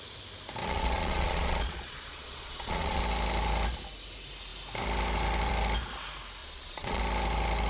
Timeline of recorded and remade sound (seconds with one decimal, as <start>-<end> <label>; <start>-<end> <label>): 0.0-0.6 recorded; 0.6-3.0 remade; 3.0-6.4 recorded; 6.4-7.0 remade; 7.0-7.7 recorded